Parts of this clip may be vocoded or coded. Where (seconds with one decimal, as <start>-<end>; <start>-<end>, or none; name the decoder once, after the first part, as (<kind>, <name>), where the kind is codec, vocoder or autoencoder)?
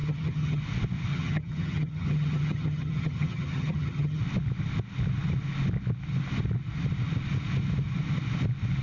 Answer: 0.0-0.6 (vocoder, HiFi-GAN); 1.1-4.2